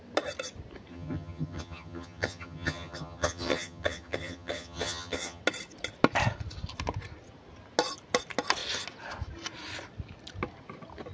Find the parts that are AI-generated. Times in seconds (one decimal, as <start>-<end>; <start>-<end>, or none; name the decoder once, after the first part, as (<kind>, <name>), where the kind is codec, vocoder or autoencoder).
0.9-5.4 (vocoder, HiFi-GAN)

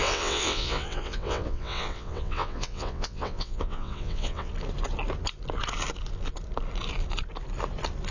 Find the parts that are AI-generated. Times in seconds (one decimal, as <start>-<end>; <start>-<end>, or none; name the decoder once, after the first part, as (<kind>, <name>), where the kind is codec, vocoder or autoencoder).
0.0-4.5 (vocoder, WaveNeXt)

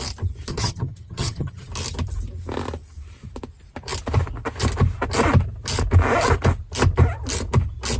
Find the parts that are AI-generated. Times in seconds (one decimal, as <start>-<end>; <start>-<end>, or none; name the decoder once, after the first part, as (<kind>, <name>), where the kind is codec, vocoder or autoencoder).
0.5-1.7 (vocoder, HiFi-GAN)

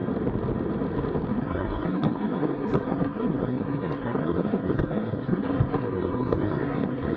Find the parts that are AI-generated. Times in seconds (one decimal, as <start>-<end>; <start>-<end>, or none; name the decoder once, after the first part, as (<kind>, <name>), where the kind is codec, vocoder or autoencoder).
1.3-7.2 (codec, SNAC)

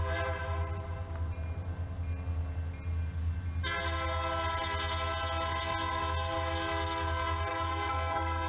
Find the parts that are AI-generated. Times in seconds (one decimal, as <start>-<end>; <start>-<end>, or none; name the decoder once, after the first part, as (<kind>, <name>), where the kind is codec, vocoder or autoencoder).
7.5-8.5 (codec, SNAC)

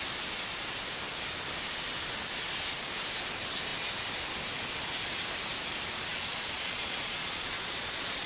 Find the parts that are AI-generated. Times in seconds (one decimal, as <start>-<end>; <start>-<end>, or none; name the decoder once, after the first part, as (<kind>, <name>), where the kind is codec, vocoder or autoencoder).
6.1-8.3 (vocoder, Vocos)

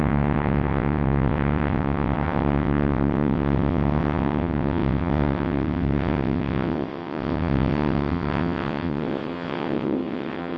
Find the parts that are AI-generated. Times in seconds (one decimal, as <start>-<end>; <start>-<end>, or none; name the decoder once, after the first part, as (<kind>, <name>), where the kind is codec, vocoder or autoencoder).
0.0-10.6 (vocoder, WaveNeXt)